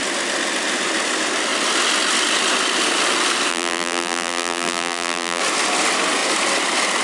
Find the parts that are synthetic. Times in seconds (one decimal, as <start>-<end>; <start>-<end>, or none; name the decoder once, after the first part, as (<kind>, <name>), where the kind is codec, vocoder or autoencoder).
3.5-5.4 (vocoder, BigVGAN v2)